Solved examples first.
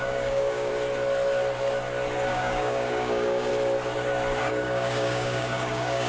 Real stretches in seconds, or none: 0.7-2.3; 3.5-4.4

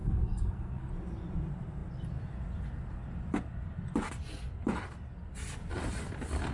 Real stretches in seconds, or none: 0.9-6.5

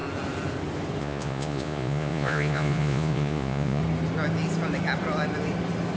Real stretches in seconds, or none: 0.0-1.0; 3.8-6.0